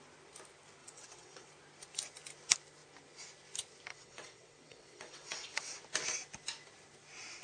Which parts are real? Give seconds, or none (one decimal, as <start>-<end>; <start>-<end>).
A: 0.0-0.8; 1.5-3.9; 5.8-7.4